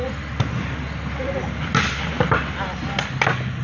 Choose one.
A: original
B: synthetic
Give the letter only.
A